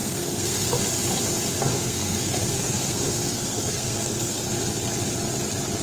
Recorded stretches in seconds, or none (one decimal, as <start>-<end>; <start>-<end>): 0.7-1.7; 4.5-5.8